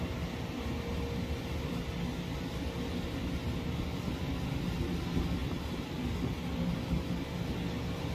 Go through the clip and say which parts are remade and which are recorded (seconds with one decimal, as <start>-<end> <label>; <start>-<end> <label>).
0.0-8.1 recorded

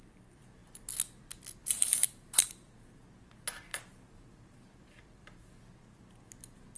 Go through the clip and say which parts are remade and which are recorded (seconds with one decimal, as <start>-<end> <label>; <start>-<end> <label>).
0.0-1.6 recorded; 1.6-2.5 remade; 2.5-3.7 recorded; 3.7-5.4 remade; 5.4-6.8 recorded

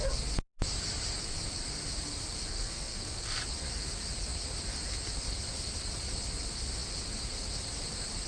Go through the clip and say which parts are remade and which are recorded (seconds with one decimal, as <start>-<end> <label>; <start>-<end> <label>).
0.0-2.5 recorded; 2.5-3.4 remade; 3.4-8.3 recorded

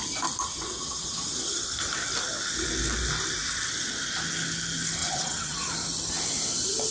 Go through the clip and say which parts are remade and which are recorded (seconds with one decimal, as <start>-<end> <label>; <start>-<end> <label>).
0.0-0.5 recorded; 0.5-1.6 remade; 1.6-5.0 recorded; 5.0-5.7 remade; 5.7-6.9 recorded

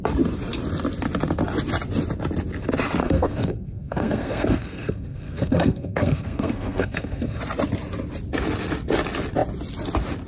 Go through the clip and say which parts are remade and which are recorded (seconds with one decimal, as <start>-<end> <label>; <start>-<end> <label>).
0.0-3.0 recorded; 3.0-7.4 remade; 7.4-10.3 recorded

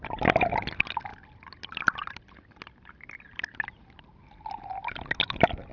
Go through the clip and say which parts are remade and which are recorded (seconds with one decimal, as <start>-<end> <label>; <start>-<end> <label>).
0.0-5.7 recorded

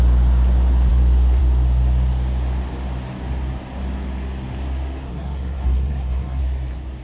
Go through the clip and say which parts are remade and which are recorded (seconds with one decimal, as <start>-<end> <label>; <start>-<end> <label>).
0.0-5.1 recorded; 5.1-6.4 remade; 6.4-7.0 recorded

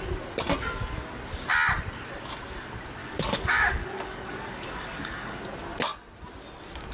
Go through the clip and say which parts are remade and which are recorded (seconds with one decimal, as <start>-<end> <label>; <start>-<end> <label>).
0.0-3.0 recorded; 3.0-5.4 remade; 5.4-6.9 recorded